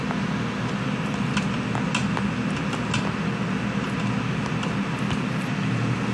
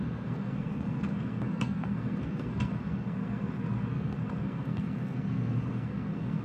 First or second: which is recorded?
first